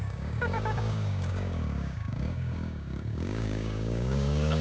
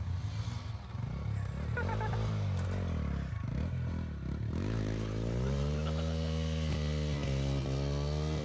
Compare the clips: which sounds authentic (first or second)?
second